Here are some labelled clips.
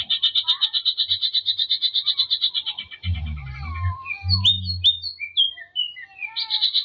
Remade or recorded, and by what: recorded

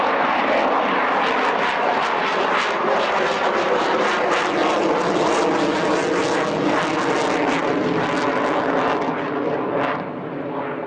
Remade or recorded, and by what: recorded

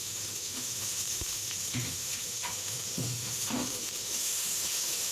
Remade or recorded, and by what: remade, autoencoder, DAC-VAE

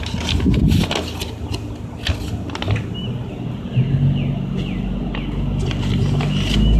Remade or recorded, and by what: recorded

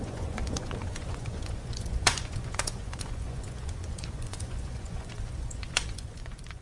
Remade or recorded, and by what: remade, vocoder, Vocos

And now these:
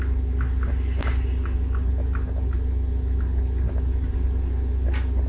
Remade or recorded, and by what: recorded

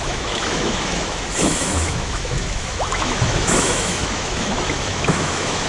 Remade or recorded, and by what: remade, autoencoder, DAC-VAE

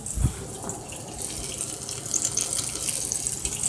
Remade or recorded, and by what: recorded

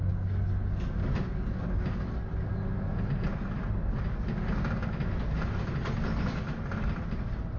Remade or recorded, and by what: recorded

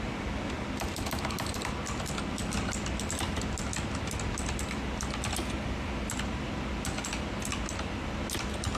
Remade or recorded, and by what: recorded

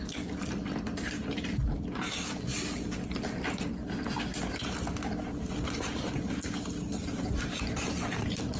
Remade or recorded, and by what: recorded